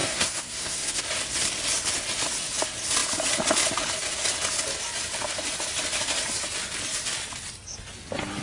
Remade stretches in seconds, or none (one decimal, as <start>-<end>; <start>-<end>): 0.0-1.0